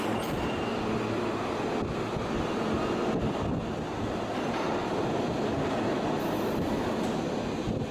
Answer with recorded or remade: recorded